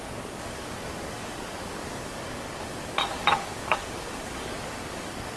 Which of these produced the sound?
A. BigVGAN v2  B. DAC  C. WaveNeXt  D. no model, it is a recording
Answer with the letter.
B